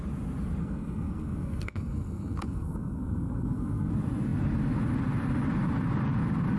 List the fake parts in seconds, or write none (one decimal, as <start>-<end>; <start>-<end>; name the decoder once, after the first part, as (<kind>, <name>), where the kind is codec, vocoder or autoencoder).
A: 0.6-3.9 (codec, SNAC)